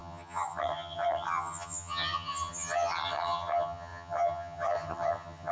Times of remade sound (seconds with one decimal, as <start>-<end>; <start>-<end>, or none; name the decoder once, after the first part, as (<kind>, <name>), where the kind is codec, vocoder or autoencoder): 0.0-5.5 (vocoder, HiFi-GAN)